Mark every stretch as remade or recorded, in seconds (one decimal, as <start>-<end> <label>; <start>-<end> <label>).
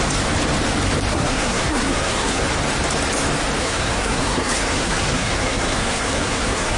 0.0-1.1 recorded; 1.1-2.4 remade; 2.4-3.6 recorded; 3.6-6.8 remade